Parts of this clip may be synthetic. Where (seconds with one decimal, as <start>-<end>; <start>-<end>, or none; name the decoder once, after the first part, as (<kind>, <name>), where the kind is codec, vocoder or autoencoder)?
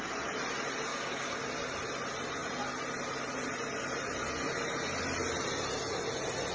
0.9-1.4 (codec, DAC)